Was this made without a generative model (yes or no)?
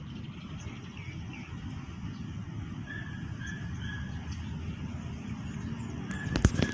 yes